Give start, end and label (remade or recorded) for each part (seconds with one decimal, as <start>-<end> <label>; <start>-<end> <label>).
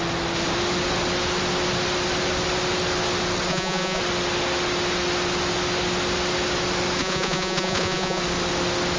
0.0-3.5 recorded; 3.5-4.0 remade; 4.0-7.0 recorded; 7.0-8.2 remade; 8.2-9.0 recorded